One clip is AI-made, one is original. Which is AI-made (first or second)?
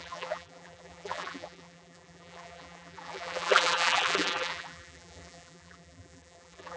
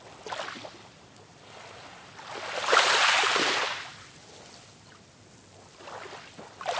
first